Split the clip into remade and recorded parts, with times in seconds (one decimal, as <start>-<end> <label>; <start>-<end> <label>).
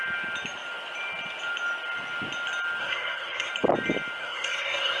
0.0-2.8 recorded; 2.8-3.5 remade; 3.5-4.2 recorded; 4.2-5.0 remade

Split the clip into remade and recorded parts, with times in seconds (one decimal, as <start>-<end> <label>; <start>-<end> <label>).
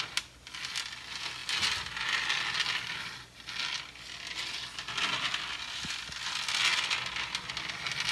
0.0-8.1 recorded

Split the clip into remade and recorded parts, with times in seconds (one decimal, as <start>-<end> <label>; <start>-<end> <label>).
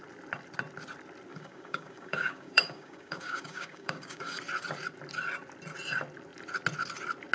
0.0-1.3 recorded; 1.3-4.4 remade; 4.4-7.3 recorded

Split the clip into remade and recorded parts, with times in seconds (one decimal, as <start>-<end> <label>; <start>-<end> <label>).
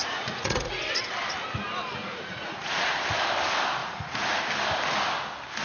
0.0-0.7 remade; 0.7-2.0 recorded; 2.0-2.9 remade; 2.9-3.8 recorded; 3.8-4.4 remade; 4.4-5.6 recorded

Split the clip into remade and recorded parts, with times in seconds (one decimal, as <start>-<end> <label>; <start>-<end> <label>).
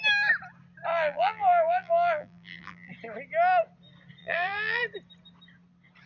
0.0-0.9 recorded; 0.9-2.9 remade; 2.9-4.2 recorded; 4.2-4.8 remade; 4.8-6.1 recorded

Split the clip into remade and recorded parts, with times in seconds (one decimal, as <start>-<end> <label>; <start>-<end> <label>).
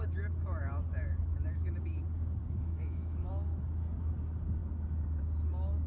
0.0-2.4 recorded; 2.4-3.3 remade; 3.3-5.9 recorded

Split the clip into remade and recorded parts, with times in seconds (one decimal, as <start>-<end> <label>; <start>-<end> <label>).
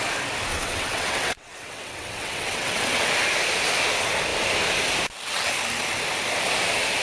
0.0-0.5 recorded; 0.5-3.1 remade; 3.1-7.0 recorded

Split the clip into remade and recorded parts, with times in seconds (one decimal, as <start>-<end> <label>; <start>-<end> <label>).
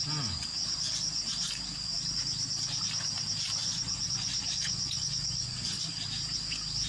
0.0-3.6 recorded; 3.6-5.9 remade; 5.9-6.9 recorded